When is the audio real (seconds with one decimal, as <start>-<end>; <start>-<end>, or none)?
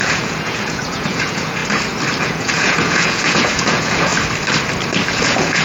1.6-2.2; 4.1-5.1